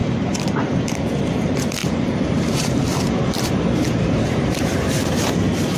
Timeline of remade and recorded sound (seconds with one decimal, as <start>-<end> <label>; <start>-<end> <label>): 0.0-1.0 remade; 1.0-1.8 recorded; 1.8-5.3 remade; 5.3-5.8 recorded